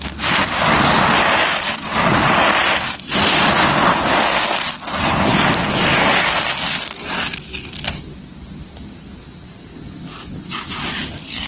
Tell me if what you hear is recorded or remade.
recorded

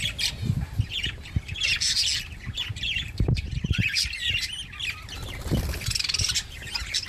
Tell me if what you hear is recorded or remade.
recorded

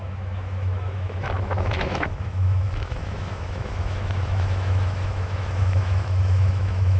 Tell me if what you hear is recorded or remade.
remade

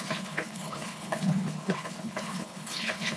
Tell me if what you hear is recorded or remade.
remade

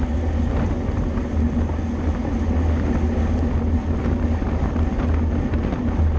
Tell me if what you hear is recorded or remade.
recorded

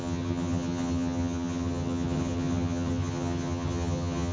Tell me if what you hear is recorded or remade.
remade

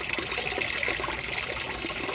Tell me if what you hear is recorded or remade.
recorded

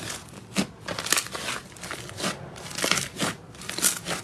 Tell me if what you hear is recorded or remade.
recorded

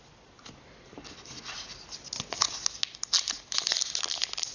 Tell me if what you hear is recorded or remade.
recorded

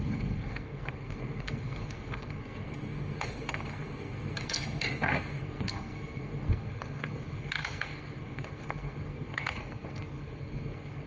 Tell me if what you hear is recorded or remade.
remade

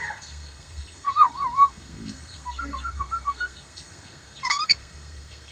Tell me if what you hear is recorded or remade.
remade